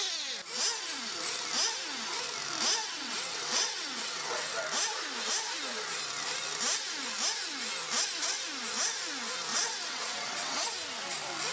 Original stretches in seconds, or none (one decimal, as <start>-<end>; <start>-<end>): 0.0-2.8; 4.5-9.5; 10.7-11.5